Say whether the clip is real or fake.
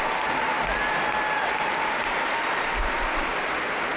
real